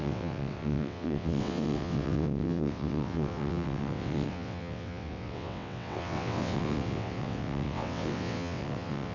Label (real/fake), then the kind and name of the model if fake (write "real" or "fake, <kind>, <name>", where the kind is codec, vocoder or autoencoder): fake, vocoder, WaveNeXt